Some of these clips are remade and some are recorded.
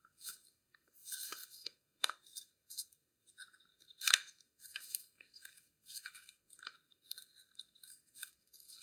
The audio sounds remade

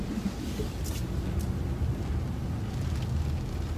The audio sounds recorded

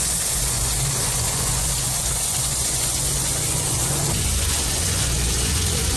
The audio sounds remade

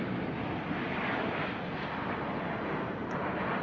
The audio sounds recorded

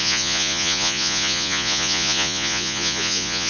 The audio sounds remade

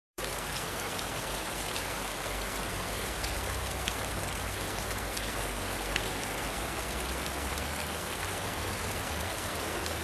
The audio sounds remade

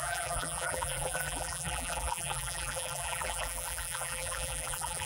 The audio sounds remade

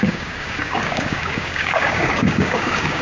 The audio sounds remade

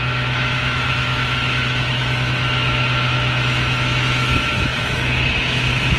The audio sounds remade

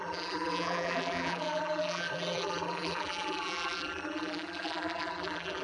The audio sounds remade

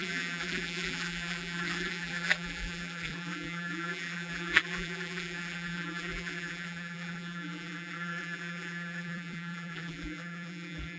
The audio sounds remade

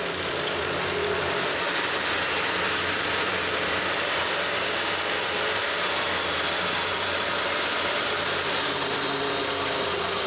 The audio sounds remade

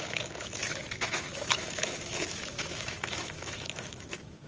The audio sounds remade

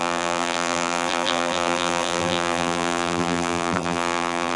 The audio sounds remade